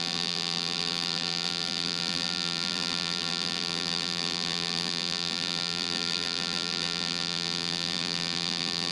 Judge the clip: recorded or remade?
remade